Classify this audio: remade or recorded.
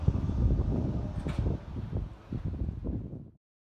recorded